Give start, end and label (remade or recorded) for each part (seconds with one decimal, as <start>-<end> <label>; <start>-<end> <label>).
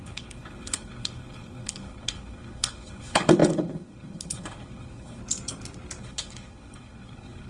0.0-5.2 remade; 5.2-6.0 recorded; 6.0-7.5 remade